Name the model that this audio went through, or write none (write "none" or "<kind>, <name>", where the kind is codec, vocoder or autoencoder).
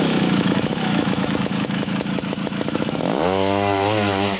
autoencoder, DAC-VAE